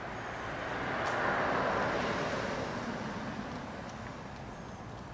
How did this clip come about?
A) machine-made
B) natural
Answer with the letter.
B